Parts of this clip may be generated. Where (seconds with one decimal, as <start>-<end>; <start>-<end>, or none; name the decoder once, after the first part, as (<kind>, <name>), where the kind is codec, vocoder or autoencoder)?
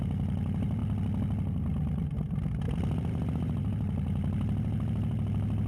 0.0-0.8 (vocoder, BigVGAN v2); 3.1-5.7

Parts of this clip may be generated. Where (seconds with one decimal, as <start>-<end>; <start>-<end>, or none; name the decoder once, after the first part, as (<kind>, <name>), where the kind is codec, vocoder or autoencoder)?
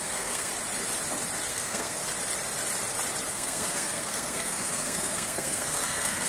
0.0-0.5 (codec, SNAC); 1.5-2.0; 3.3-6.3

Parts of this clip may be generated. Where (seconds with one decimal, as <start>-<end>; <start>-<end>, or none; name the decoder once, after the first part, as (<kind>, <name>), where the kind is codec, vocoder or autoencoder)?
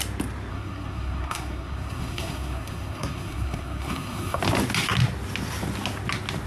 0.5-4.4 (codec, SNAC)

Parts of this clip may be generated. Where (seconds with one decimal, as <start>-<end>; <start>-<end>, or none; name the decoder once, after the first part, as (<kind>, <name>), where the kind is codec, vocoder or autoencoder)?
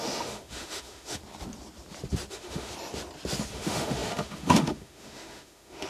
0.0-1.2 (autoencoder, DAC-VAE); 2.3-2.7; 3.5-5.9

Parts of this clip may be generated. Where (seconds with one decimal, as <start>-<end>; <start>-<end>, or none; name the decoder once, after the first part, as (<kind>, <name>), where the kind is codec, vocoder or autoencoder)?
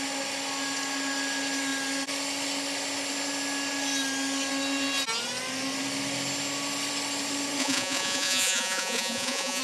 7.6-9.6 (vocoder, Vocos)